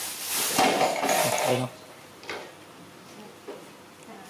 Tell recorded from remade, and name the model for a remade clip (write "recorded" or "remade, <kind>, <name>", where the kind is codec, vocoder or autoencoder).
recorded